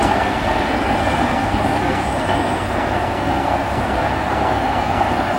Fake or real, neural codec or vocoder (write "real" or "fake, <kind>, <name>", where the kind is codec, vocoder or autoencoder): fake, codec, SNAC